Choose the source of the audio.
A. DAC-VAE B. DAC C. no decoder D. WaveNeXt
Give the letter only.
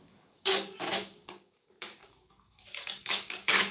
B